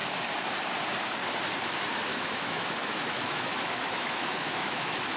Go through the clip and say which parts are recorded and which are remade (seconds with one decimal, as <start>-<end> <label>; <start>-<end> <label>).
0.0-2.1 recorded; 2.1-5.2 remade